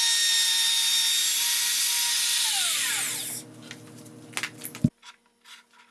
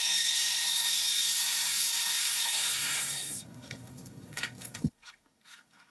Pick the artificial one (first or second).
second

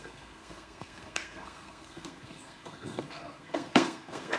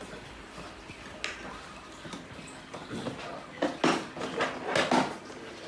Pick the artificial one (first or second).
first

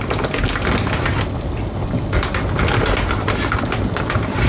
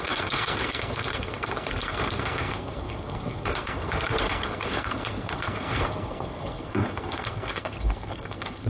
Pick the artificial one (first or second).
second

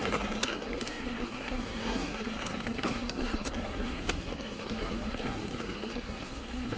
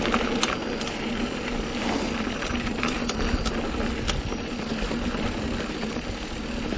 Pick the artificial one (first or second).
first